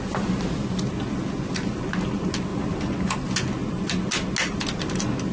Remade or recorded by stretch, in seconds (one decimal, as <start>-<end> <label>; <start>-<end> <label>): 0.0-5.3 recorded